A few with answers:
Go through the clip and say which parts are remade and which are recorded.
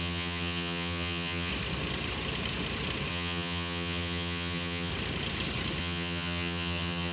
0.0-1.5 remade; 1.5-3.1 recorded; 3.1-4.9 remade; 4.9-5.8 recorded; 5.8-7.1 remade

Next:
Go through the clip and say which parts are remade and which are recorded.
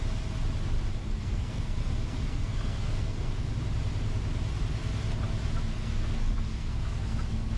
0.0-1.0 recorded; 1.0-3.5 remade; 3.5-5.7 recorded; 5.7-7.6 remade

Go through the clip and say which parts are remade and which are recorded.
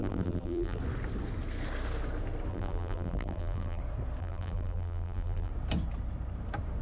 0.0-0.8 remade; 0.8-2.5 recorded; 2.5-3.8 remade; 3.8-4.2 recorded; 4.2-5.5 remade; 5.5-6.8 recorded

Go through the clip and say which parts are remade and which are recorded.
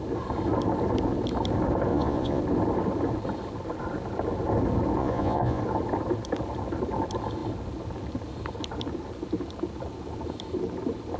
0.0-1.9 recorded; 1.9-2.4 remade; 2.4-5.0 recorded; 5.0-5.6 remade; 5.6-11.2 recorded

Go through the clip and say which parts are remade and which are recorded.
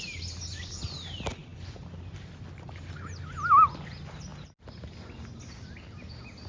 0.0-6.5 recorded